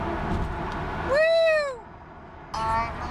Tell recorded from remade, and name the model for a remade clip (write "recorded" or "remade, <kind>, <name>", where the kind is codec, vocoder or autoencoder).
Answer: recorded